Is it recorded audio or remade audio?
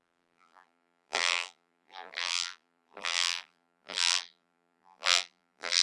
remade